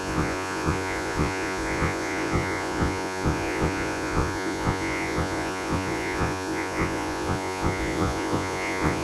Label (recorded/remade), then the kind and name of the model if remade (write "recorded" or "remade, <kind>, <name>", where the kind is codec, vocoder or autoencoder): remade, vocoder, Vocos